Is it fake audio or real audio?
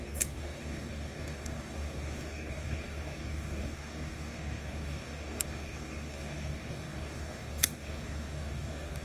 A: fake